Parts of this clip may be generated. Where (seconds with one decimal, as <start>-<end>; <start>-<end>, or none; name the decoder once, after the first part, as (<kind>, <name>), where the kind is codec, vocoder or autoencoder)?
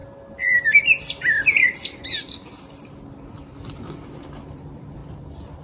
2.1-5.0 (vocoder, BigVGAN v2)